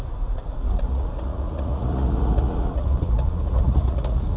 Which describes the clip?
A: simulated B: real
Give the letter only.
A